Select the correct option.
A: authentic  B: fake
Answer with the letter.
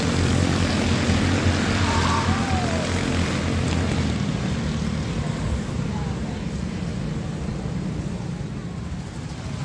A